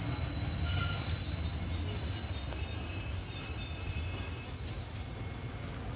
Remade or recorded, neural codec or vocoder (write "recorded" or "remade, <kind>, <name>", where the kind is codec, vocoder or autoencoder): recorded